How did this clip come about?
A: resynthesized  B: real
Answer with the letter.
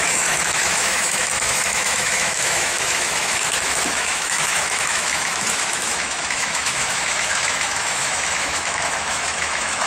A